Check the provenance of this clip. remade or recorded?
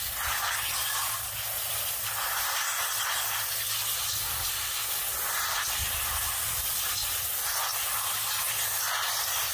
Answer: recorded